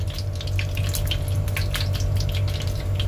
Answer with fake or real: real